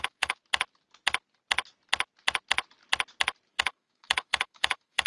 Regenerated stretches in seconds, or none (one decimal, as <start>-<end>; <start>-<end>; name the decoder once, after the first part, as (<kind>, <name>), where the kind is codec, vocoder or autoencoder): 0.0-0.4 (autoencoder, DAC-VAE); 3.5-5.1